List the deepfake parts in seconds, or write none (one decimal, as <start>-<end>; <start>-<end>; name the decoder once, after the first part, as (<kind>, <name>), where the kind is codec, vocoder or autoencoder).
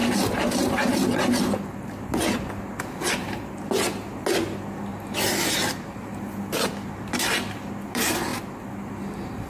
none